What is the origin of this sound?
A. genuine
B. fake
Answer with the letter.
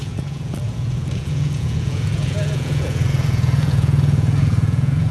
B